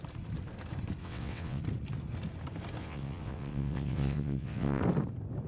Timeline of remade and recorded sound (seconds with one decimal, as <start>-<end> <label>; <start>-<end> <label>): 0.0-1.0 recorded; 1.0-1.6 remade; 1.6-2.8 recorded; 2.8-4.8 remade; 4.8-5.5 recorded